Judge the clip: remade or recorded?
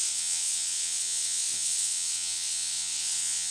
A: remade